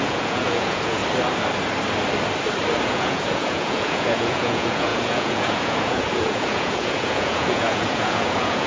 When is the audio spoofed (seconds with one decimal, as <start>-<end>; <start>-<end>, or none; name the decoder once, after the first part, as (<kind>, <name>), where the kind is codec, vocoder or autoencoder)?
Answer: 0.0-1.0 (vocoder, Vocos); 2.8-8.7